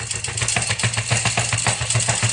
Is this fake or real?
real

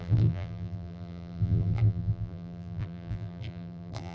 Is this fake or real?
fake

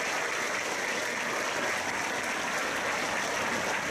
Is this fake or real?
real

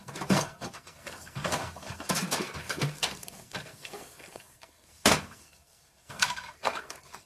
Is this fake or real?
fake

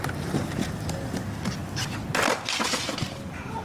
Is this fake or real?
real